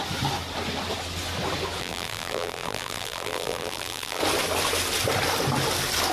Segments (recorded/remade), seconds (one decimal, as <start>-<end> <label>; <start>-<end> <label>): 0.0-1.8 recorded; 1.8-4.2 remade; 4.2-6.1 recorded